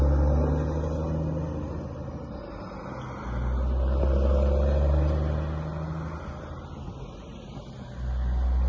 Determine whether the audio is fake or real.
real